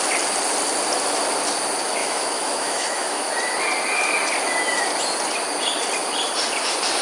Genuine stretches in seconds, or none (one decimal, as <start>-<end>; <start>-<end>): 0.0-2.0; 3.3-7.0